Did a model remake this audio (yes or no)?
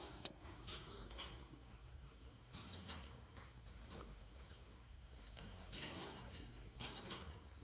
yes